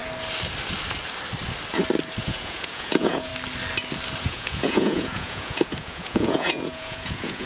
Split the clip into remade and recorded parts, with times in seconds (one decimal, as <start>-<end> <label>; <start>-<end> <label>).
0.0-2.2 recorded; 2.2-3.3 remade; 3.3-4.2 recorded; 4.2-7.5 remade